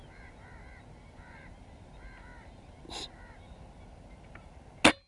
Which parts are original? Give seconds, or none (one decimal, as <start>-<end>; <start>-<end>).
0.0-5.1